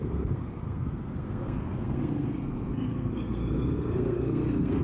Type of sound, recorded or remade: remade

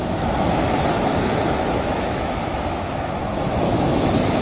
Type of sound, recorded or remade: remade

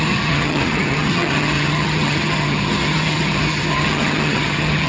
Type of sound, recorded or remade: remade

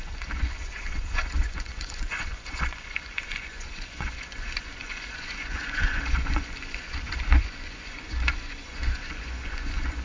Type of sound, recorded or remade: remade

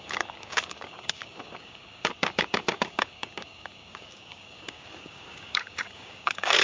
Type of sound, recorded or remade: remade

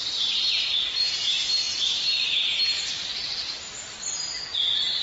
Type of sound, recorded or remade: remade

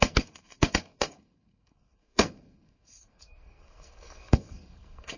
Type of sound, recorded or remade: remade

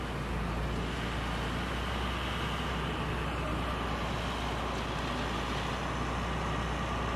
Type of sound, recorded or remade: recorded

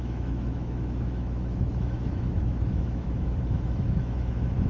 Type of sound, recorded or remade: remade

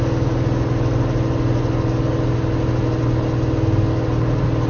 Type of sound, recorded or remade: recorded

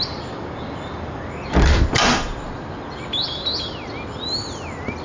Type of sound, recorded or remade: recorded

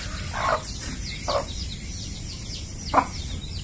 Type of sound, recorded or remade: recorded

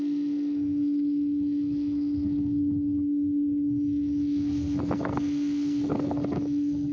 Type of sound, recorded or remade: remade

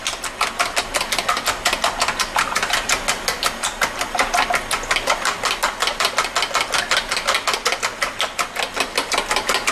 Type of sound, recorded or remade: recorded